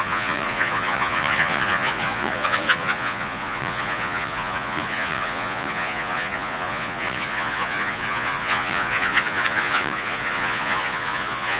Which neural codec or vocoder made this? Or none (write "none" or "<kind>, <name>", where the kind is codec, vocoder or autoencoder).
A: vocoder, Vocos